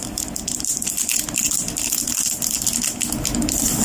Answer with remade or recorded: recorded